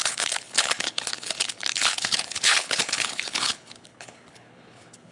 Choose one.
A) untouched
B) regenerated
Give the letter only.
B